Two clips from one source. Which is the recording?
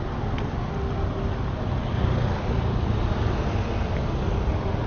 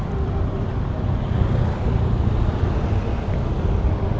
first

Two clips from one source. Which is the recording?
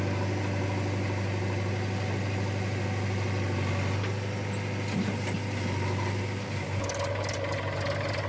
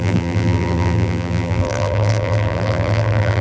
first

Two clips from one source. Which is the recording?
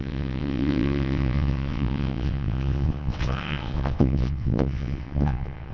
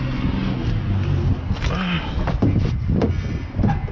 second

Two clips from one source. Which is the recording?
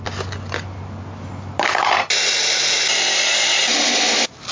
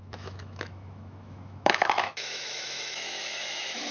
first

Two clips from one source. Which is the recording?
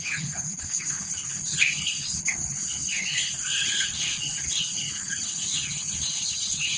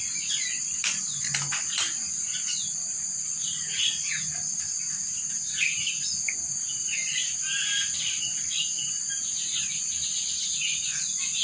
second